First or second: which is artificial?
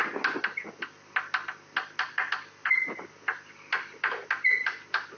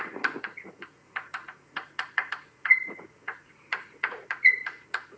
second